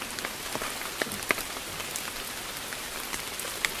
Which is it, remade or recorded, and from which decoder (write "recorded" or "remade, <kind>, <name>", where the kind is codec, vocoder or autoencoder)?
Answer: recorded